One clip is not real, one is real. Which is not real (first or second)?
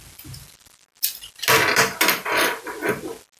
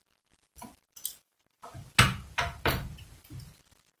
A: second